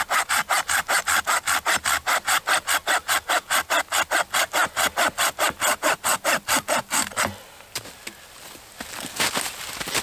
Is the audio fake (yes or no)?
no